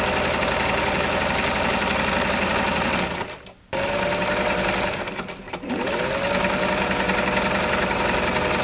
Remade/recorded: recorded